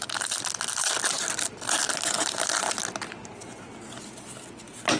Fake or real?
real